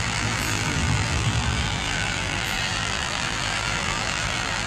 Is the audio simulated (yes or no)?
yes